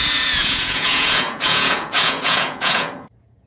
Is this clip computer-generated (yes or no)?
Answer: yes